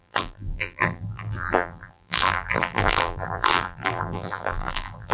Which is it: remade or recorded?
remade